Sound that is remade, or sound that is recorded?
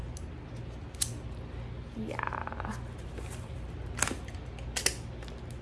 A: recorded